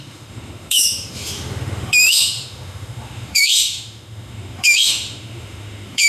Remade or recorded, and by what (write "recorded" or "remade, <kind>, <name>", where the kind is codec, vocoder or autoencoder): remade, autoencoder, DAC-VAE